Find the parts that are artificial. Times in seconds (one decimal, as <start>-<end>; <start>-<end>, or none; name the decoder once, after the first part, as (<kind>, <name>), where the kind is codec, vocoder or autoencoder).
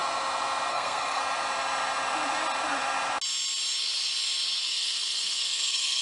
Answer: 0.7-1.2 (codec, SNAC); 4.6-6.0